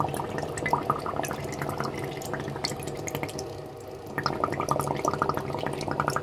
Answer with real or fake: real